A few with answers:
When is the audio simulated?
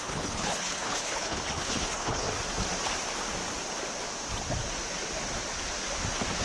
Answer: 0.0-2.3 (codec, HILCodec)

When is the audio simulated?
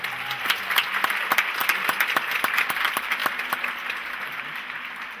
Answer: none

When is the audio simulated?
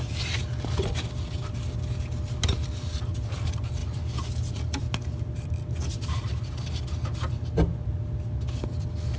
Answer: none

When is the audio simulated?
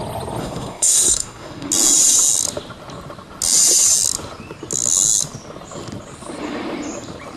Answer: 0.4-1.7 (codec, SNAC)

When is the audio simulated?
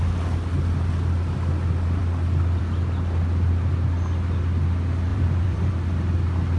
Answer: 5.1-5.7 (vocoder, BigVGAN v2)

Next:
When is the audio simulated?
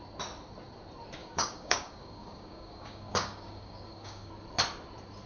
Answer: 1.2-4.3 (codec, DAC)